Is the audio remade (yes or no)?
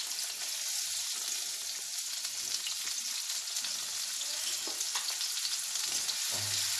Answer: no